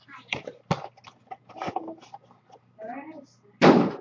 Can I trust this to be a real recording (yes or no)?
yes